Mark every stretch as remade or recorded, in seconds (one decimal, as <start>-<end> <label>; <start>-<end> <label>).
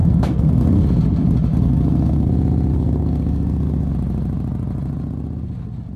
0.0-0.8 remade; 0.8-1.5 recorded; 1.5-2.3 remade; 2.3-2.7 recorded; 2.7-3.9 remade; 3.9-6.0 recorded